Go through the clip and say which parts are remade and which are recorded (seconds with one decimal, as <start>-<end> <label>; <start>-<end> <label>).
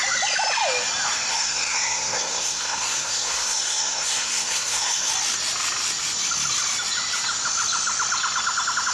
0.0-1.3 recorded; 1.3-5.1 remade; 5.1-8.9 recorded